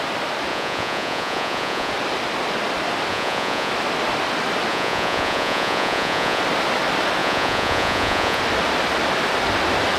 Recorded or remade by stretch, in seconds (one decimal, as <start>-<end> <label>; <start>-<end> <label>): 0.0-0.5 recorded; 0.5-1.9 remade; 1.9-3.1 recorded; 3.1-3.7 remade; 3.7-4.7 recorded; 4.7-6.4 remade; 6.4-7.2 recorded; 7.2-8.4 remade; 8.4-10.0 recorded